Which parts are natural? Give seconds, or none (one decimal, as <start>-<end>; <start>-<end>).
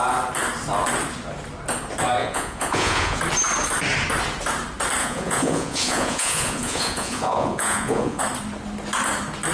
0.0-2.2; 3.2-5.0; 8.2-9.5